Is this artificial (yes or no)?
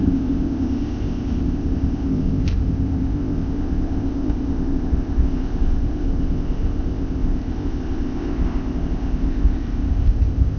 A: yes